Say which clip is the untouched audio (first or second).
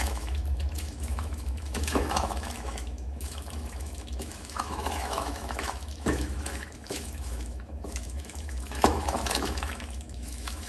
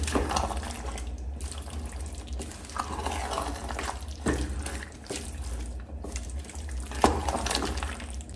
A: second